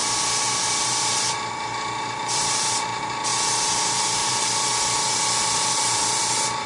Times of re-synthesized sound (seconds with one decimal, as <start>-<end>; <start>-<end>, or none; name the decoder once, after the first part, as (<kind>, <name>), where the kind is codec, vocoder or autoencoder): 0.6-3.3 (vocoder, BigVGAN v2); 4.3-4.7; 5.7-6.7